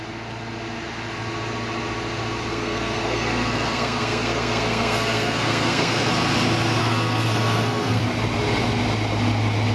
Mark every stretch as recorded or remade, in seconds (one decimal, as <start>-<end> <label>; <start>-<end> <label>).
0.0-2.5 recorded; 2.5-6.1 remade; 6.1-6.8 recorded; 6.8-8.0 remade; 8.0-9.7 recorded